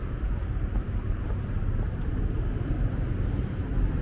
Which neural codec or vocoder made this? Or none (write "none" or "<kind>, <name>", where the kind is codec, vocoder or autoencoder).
none